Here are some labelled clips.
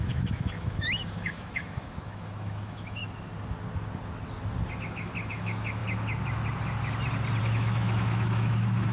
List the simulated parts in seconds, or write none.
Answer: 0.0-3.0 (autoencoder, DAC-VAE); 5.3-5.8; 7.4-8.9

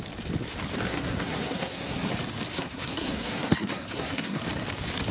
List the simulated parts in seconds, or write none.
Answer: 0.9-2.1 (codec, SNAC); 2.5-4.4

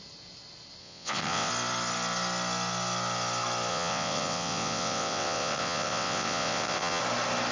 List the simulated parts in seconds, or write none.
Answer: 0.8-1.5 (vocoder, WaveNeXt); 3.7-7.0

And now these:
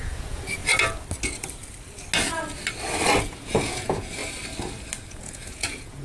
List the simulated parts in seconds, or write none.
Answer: 0.0-0.6 (vocoder, Vocos); 3.2-4.2; 5.1-6.0